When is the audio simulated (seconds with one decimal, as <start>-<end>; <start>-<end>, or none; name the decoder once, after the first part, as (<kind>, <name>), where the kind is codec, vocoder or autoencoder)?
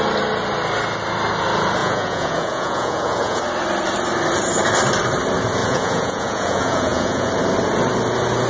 1.8-3.4 (vocoder, Vocos); 5.6-7.3